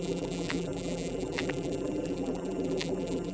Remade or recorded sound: remade